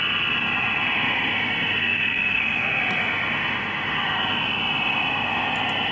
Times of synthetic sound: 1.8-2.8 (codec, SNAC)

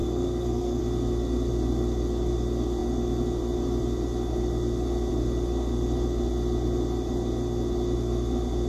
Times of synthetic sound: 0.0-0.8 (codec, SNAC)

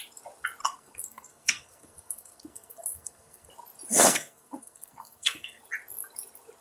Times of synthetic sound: 0.6-3.5 (codec, SNAC); 3.9-5.6

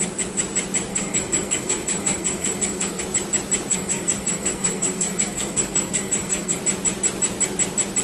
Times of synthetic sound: 0.9-3.0 (codec, SNAC); 3.7-6.6

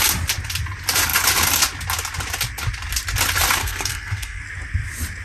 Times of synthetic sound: 3.6-4.4 (codec, SNAC)

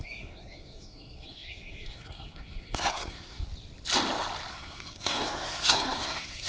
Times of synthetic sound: 0.0-3.5 (codec, SNAC); 4.5-6.5

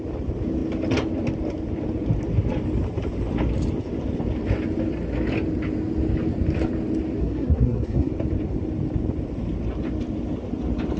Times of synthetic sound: 7.2-8.1 (codec, SNAC)